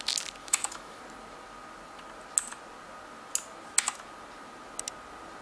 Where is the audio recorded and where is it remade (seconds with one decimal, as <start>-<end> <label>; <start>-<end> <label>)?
0.0-0.4 recorded; 0.4-1.0 remade; 1.0-5.4 recorded